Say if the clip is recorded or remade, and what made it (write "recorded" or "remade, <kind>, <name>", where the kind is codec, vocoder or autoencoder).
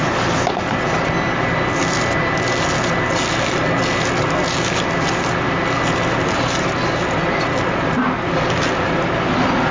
recorded